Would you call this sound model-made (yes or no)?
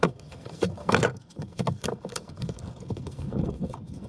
yes